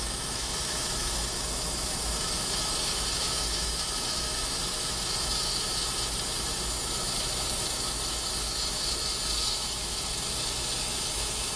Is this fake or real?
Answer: fake